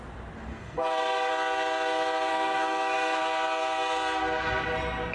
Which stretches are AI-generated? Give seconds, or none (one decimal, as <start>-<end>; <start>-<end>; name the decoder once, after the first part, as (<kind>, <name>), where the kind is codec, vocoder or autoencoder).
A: 0.5-1.3 (codec, SNAC); 2.3-3.2